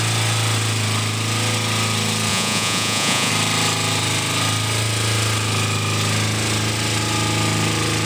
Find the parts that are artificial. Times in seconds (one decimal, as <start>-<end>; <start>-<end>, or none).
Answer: 2.3-3.3